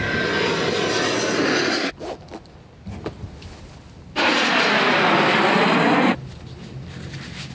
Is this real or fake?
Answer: real